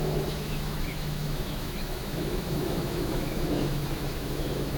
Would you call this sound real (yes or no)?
no